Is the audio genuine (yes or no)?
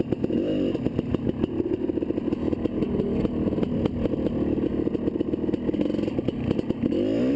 yes